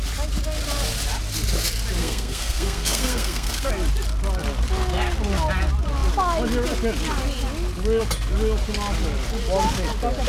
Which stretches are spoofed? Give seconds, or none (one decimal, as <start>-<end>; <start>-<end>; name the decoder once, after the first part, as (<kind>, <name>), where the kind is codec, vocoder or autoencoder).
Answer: 2.0-3.7 (codec, SNAC)